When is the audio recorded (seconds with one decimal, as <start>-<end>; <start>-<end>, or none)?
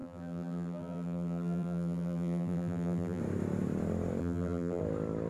3.2-4.2; 4.8-5.3